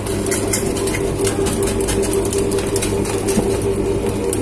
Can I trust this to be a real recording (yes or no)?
yes